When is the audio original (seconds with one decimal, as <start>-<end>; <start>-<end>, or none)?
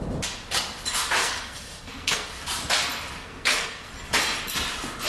0.0-1.2; 2.3-3.2; 3.9-5.1